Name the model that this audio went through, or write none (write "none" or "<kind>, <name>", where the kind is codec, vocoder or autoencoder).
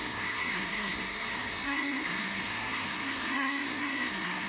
codec, SNAC